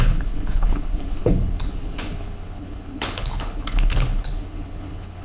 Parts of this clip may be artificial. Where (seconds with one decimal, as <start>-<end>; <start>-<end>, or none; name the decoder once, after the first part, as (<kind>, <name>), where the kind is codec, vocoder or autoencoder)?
0.0-5.2 (codec, HILCodec)